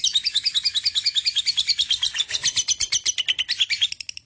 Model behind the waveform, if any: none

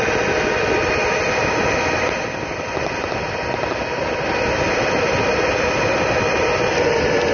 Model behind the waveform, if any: none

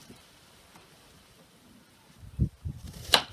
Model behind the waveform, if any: vocoder, BigVGAN v2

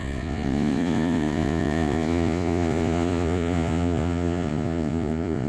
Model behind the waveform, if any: vocoder, Vocos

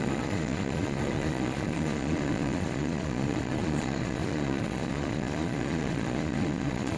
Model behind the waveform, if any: vocoder, Vocos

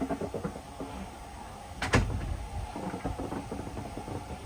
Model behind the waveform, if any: none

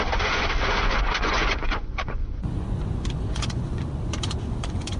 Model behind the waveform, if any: vocoder, Vocos